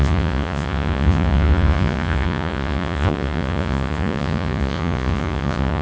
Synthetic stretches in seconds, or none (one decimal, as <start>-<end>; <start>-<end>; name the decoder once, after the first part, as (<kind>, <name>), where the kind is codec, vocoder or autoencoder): 0.0-5.8 (vocoder, Vocos)